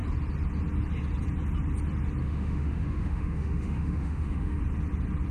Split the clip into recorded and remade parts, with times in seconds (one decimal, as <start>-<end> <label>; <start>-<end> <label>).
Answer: 0.0-2.2 recorded; 2.2-4.6 remade; 4.6-5.3 recorded